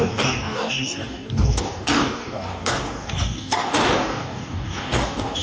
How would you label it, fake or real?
fake